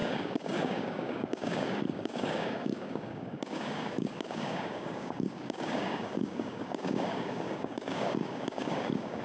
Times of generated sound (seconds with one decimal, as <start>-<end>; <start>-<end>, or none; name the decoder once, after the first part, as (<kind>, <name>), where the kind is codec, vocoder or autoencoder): 0.0-9.2 (codec, DAC)